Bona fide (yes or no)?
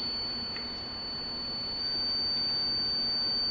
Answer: yes